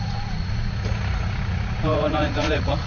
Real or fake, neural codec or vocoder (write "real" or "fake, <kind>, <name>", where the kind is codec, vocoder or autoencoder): fake, vocoder, Vocos